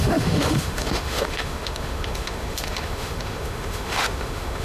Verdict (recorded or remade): remade